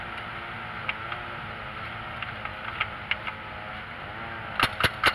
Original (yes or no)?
yes